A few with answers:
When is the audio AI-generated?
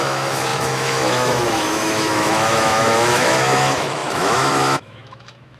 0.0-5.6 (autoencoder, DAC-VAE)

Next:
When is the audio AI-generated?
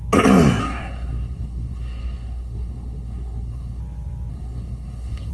0.6-3.8 (codec, SNAC); 4.3-5.3